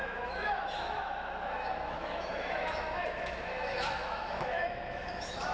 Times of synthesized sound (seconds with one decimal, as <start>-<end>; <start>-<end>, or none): 0.0-5.5